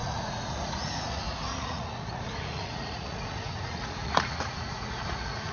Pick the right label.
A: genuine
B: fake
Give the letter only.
B